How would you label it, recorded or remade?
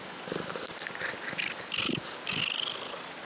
recorded